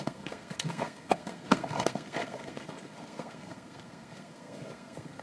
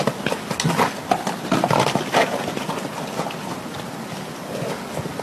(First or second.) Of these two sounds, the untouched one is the second